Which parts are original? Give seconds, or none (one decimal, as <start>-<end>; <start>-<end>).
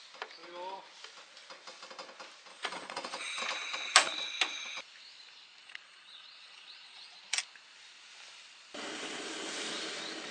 0.0-2.5; 3.4-5.6; 7.2-10.3